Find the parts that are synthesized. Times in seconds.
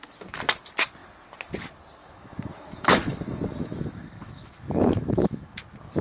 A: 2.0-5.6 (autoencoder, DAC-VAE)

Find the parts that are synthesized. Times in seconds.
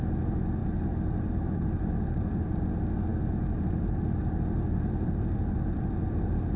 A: 0.6-2.6 (vocoder, BigVGAN v2)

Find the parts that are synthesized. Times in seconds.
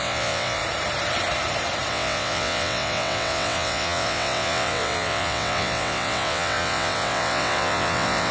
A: 0.0-0.6 (vocoder, WaveNeXt); 1.9-8.3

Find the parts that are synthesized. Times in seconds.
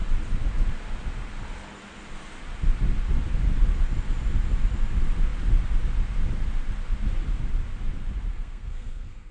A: 8.3-9.3 (codec, SNAC)